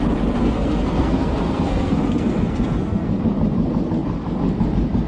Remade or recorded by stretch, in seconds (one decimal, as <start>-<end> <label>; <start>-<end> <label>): 0.0-0.4 recorded; 0.4-3.2 remade; 3.2-5.1 recorded